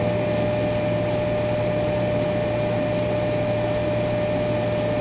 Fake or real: real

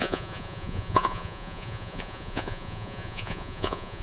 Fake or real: fake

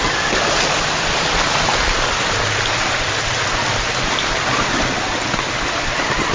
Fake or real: real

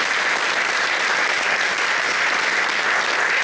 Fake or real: real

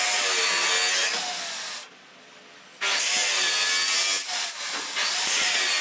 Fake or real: real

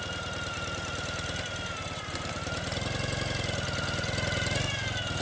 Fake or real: real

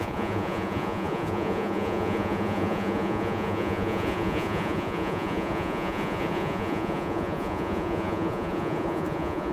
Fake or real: fake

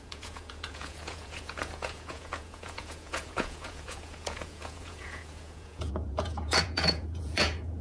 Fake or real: fake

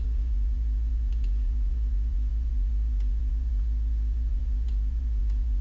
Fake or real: fake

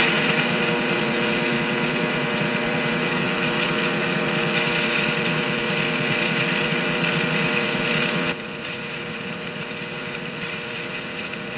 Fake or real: fake